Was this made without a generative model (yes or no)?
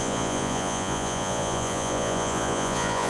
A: no